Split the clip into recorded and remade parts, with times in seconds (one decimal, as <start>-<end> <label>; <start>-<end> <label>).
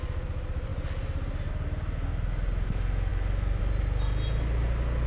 0.0-5.1 recorded